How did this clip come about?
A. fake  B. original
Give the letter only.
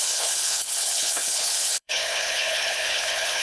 A